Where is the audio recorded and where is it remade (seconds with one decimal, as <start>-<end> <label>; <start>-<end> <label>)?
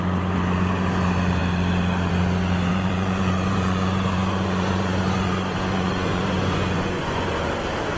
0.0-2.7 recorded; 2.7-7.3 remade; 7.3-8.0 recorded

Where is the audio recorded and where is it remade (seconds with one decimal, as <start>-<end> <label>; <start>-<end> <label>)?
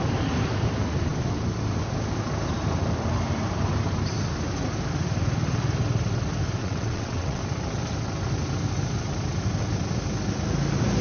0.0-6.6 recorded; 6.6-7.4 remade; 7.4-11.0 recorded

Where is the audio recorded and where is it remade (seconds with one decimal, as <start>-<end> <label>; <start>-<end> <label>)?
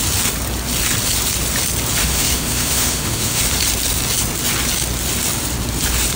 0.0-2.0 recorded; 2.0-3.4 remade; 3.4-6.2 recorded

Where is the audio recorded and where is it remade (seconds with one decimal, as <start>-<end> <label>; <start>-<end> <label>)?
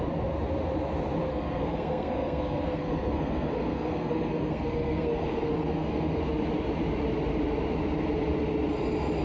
0.0-1.3 recorded; 1.3-6.2 remade; 6.2-9.2 recorded